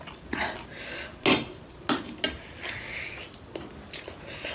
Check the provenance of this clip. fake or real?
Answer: real